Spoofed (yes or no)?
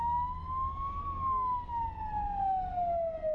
no